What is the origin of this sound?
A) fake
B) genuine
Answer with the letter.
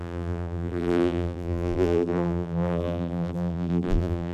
A